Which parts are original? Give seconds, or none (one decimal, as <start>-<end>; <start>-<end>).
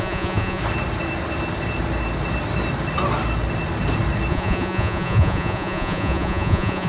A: 0.6-4.3